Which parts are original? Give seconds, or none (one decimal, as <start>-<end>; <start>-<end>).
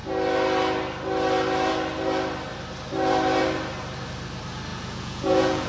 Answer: 0.0-4.7